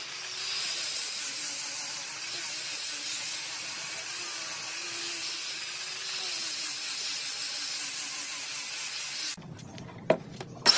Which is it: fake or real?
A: real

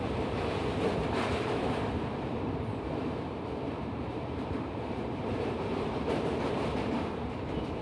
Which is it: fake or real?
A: fake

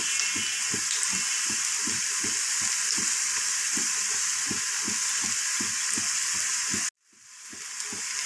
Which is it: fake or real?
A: real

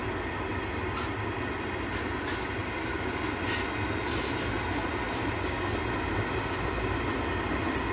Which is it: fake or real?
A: real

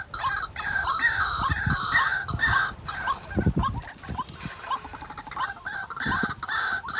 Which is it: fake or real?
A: real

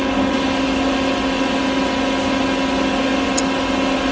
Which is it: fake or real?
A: real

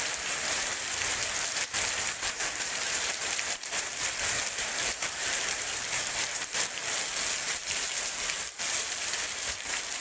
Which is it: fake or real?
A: fake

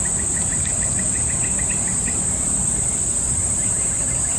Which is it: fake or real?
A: fake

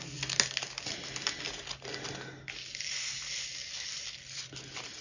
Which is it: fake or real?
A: real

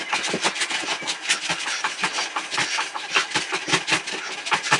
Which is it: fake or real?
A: real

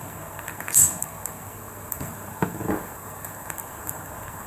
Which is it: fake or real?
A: fake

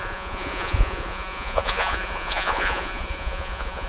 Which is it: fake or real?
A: fake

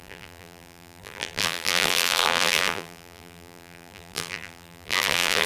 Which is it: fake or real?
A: fake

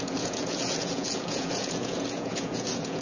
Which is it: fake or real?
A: fake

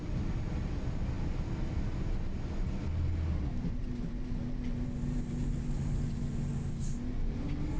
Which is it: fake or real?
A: real